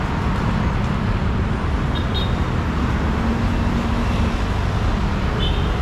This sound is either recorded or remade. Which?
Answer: recorded